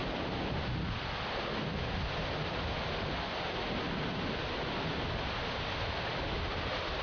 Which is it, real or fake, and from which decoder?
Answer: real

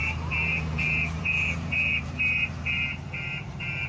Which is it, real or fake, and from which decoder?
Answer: fake, vocoder, BigVGAN v2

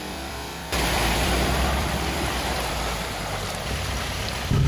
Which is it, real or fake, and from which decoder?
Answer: fake, vocoder, BigVGAN v2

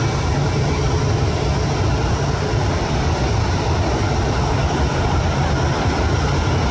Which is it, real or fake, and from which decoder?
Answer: real